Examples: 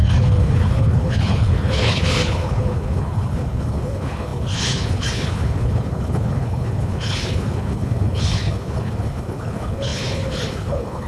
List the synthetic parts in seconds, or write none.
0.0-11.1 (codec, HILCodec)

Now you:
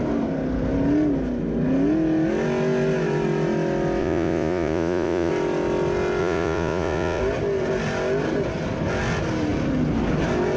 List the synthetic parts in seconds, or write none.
4.0-5.3 (vocoder, Vocos); 6.2-7.2